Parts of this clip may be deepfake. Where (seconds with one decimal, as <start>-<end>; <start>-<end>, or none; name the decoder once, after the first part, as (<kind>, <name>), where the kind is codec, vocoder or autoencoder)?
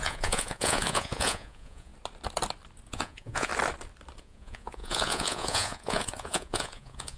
0.0-1.9 (vocoder, Vocos); 2.9-3.5; 4.2-7.2